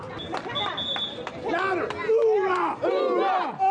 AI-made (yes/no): no